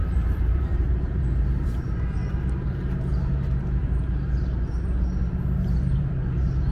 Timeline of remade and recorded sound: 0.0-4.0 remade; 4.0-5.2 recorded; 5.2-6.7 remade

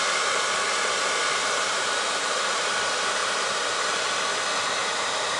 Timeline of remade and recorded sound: 0.0-1.4 recorded; 1.4-2.6 remade; 2.6-3.2 recorded; 3.2-4.2 remade; 4.2-4.8 recorded; 4.8-5.4 remade

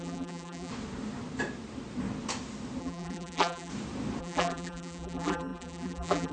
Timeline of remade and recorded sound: 0.0-0.7 remade; 0.7-2.8 recorded; 2.8-3.7 remade; 3.7-4.2 recorded; 4.2-6.3 remade

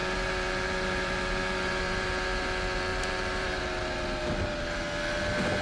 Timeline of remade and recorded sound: 0.0-2.5 remade; 2.5-2.9 recorded; 2.9-3.6 remade; 3.6-5.6 recorded

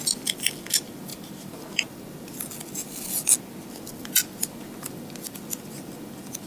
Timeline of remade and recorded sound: 0.0-6.5 recorded

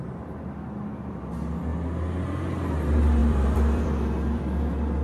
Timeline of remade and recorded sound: 0.0-3.2 recorded; 3.2-4.4 remade; 4.4-5.0 recorded

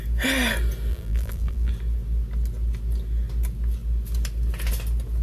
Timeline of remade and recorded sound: 0.0-0.9 recorded; 0.9-1.7 remade; 1.7-5.2 recorded

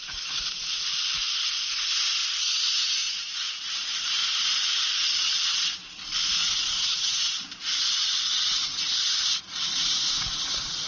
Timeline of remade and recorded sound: 0.0-4.2 remade; 4.2-5.7 recorded; 5.7-6.4 remade; 6.4-7.6 recorded; 7.6-10.9 remade